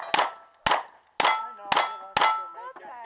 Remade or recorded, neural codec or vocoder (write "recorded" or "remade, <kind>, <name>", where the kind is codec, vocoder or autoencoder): recorded